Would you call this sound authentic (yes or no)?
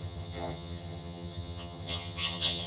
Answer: no